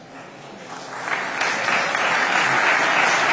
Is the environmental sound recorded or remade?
recorded